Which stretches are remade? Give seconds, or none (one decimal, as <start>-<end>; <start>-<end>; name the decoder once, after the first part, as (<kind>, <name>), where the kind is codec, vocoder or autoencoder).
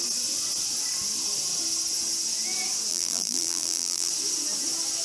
2.9-4.1 (vocoder, BigVGAN v2)